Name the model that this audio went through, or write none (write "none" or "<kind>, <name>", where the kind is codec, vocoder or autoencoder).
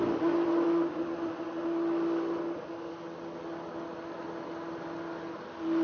none